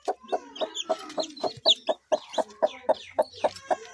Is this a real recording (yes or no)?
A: yes